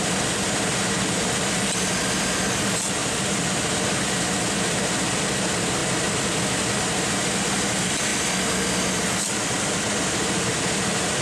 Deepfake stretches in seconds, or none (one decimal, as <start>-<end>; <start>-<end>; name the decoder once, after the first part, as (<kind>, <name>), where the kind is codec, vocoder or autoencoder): 3.0-4.2 (vocoder, BigVGAN v2)